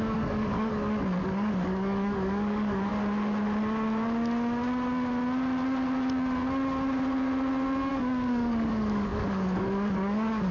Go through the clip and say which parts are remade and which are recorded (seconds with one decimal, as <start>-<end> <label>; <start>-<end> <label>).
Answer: 0.0-0.7 remade; 0.7-1.2 recorded; 1.2-2.9 remade; 2.9-7.9 recorded; 7.9-10.5 remade